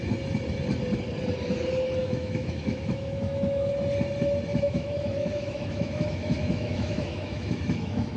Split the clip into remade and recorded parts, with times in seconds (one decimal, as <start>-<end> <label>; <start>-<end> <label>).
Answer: 0.0-2.0 recorded; 2.0-3.7 remade; 3.7-4.5 recorded; 4.5-8.2 remade